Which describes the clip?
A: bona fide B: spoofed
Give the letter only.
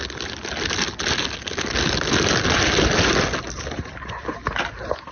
A